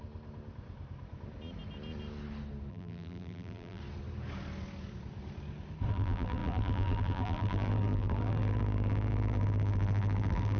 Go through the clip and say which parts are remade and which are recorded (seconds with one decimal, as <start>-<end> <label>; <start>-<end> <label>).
0.0-2.7 recorded; 2.7-3.8 remade; 3.8-5.9 recorded; 5.9-10.6 remade